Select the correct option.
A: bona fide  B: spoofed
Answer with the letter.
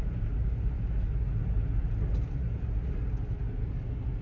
A